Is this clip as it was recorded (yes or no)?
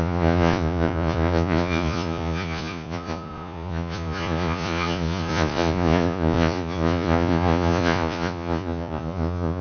no